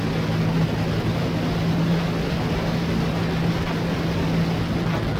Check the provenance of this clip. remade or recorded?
recorded